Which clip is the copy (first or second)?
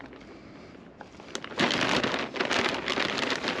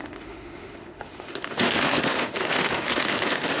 second